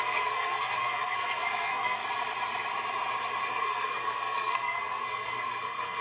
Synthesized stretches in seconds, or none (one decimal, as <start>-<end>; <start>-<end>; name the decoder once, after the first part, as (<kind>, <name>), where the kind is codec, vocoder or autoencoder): 0.0-2.0 (codec, SNAC); 3.5-6.0